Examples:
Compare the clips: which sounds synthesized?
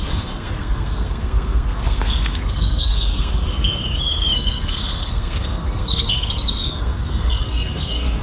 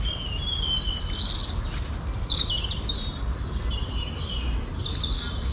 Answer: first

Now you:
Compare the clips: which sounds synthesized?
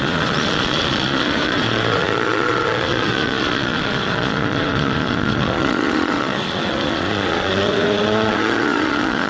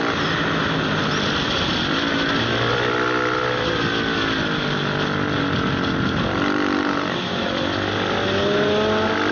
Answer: first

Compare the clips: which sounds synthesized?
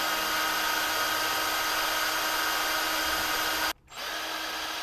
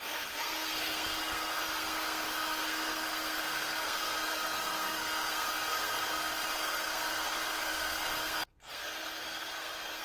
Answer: second